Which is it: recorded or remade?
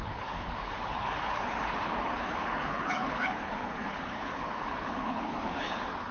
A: remade